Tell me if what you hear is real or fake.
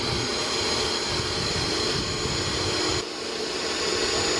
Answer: real